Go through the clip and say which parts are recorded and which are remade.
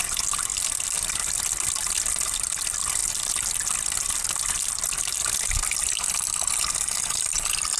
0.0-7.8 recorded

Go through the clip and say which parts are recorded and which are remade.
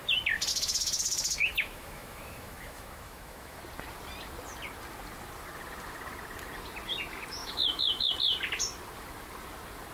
0.0-0.5 recorded; 0.5-3.6 remade; 3.6-7.4 recorded; 7.4-8.1 remade; 8.1-9.9 recorded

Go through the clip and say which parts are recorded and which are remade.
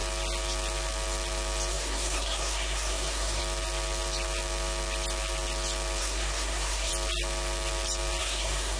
0.0-1.7 recorded; 1.7-3.4 remade; 3.4-6.0 recorded; 6.0-6.9 remade; 6.9-8.2 recorded; 8.2-8.8 remade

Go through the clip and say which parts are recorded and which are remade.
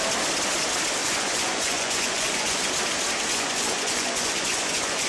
0.0-1.0 recorded; 1.0-2.7 remade; 2.7-3.3 recorded; 3.3-5.1 remade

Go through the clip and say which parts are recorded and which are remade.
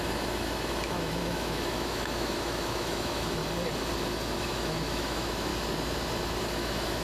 0.0-3.4 remade; 3.4-4.4 recorded; 4.4-5.5 remade; 5.5-6.4 recorded; 6.4-7.0 remade